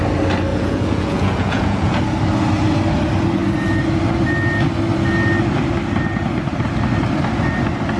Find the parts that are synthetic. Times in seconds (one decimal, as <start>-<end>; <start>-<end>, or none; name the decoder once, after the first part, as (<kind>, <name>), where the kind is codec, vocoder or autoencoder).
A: 0.5-2.0 (vocoder, Vocos)